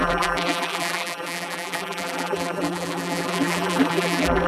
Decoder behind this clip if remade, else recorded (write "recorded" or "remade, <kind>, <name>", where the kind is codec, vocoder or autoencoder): remade, vocoder, BigVGAN v2